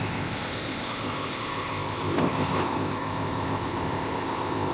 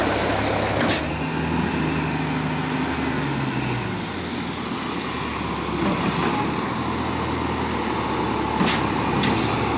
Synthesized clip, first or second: first